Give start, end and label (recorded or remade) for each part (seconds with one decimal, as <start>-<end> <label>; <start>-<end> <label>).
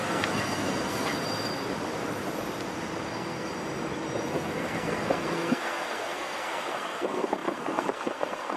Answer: 0.0-1.1 remade; 1.1-3.1 recorded; 3.1-3.5 remade; 3.5-4.3 recorded; 4.3-8.6 remade